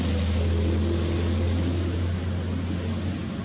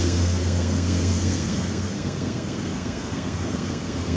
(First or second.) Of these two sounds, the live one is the first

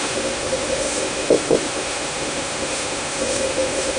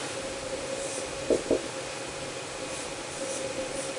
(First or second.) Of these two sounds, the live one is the second